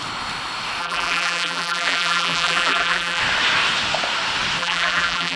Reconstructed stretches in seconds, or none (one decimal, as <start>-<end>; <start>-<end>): 0.8-3.2; 4.6-5.4